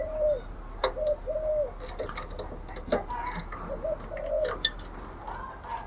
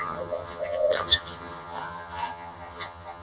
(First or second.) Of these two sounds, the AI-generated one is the second